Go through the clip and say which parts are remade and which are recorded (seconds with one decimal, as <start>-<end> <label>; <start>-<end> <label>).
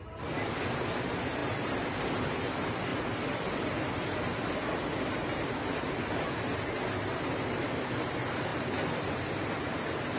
0.0-1.4 recorded; 1.4-1.9 remade; 1.9-2.9 recorded; 2.9-3.7 remade; 3.7-10.2 recorded